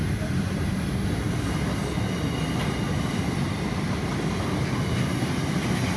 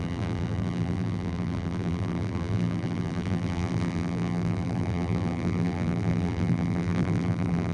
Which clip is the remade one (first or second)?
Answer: second